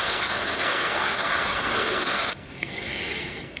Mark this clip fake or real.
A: fake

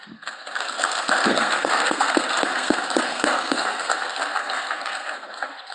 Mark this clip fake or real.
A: fake